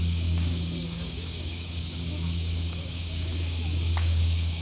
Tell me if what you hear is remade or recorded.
remade